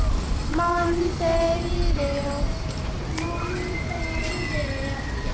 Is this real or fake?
real